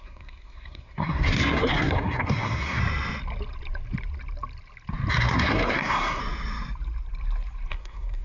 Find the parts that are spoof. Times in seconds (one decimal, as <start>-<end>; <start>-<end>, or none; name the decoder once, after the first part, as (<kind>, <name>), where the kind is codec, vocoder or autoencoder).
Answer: 0.0-2.8 (codec, SNAC); 5.1-6.2; 7.7-8.2